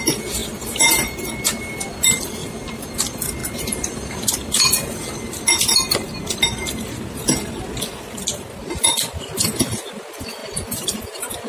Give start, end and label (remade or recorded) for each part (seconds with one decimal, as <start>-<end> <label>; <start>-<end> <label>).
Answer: 0.0-2.4 recorded; 2.4-2.9 remade; 2.9-3.4 recorded; 3.4-4.3 remade; 4.3-10.4 recorded; 10.4-11.5 remade